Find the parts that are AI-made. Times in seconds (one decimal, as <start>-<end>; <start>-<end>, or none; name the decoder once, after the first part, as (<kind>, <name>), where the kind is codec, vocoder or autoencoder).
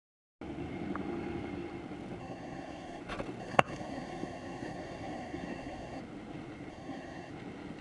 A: 2.2-3.0 (codec, SNAC); 3.4-6.0; 6.7-7.3